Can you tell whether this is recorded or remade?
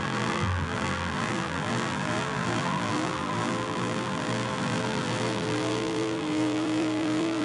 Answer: remade